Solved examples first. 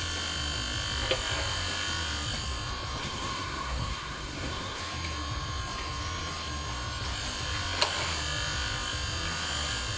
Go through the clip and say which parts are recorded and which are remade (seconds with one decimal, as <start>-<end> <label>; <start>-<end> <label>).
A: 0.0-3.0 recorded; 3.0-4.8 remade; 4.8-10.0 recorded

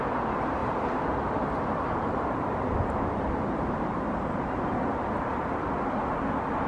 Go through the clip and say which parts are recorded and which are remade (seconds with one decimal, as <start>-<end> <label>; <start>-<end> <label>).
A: 0.0-0.6 recorded; 0.6-4.6 remade; 4.6-6.7 recorded

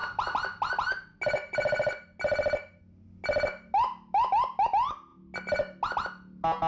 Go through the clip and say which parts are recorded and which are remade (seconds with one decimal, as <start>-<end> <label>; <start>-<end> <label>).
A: 0.0-6.7 recorded

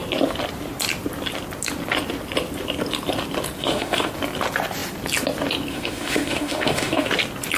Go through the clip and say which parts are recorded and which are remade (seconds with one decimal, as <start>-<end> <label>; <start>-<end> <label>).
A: 0.0-3.6 recorded; 3.6-4.1 remade; 4.1-5.7 recorded; 5.7-7.1 remade; 7.1-7.6 recorded